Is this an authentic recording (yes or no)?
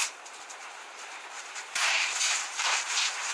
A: no